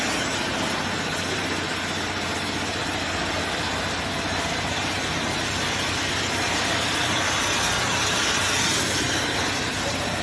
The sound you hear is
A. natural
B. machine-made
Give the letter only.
A